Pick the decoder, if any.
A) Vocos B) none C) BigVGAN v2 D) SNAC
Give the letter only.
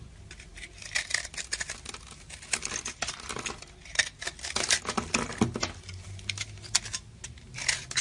B